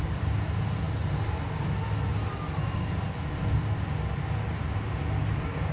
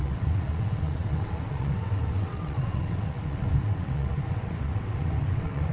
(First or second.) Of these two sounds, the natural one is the first